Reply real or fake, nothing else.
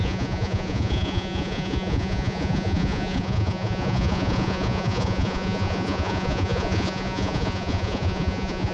fake